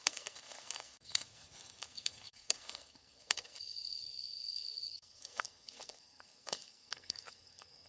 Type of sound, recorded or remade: remade